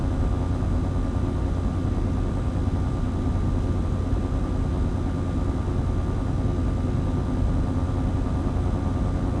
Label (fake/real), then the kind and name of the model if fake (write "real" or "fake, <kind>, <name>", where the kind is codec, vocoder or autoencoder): real